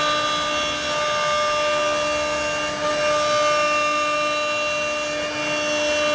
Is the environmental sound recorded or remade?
recorded